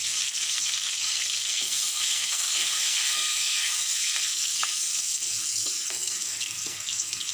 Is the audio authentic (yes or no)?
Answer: no